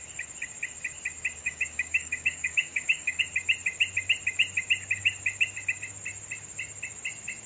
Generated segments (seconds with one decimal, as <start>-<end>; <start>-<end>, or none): 1.4-3.2